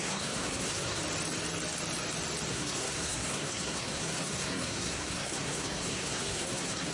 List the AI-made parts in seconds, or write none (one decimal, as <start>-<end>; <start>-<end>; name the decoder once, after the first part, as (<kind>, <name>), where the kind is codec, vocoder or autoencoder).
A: 0.0-1.0 (codec, SNAC); 2.5-6.9